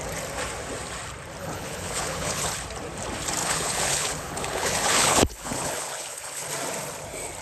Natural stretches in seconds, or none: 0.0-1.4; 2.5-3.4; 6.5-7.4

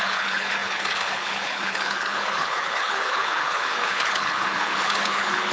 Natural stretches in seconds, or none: none

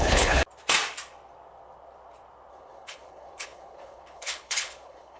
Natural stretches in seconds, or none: 0.4-2.5

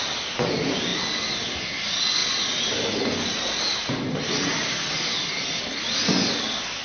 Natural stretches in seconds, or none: 0.0-6.8

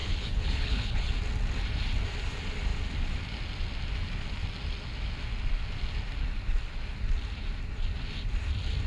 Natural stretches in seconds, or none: 1.1-8.9

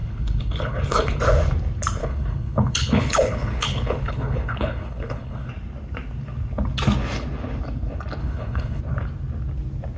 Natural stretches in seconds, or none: 1.2-2.0; 5.5-8.2; 8.8-10.0

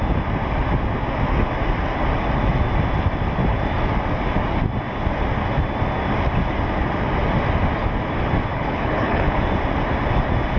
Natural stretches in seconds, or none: 0.0-8.5; 9.4-10.6